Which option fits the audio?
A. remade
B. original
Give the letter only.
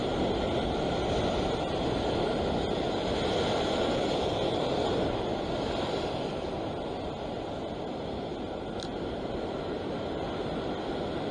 B